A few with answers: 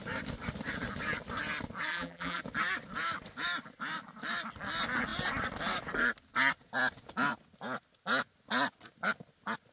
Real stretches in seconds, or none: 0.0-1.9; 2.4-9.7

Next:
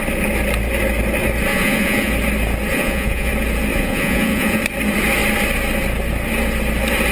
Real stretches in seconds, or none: 0.0-1.5; 2.1-2.7; 3.3-3.7; 4.6-7.1

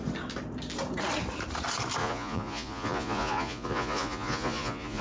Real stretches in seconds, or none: 0.0-2.0

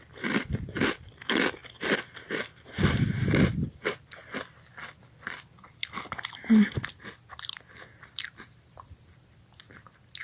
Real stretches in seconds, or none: 0.0-10.2

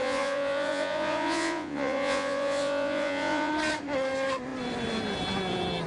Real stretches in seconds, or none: 3.5-5.9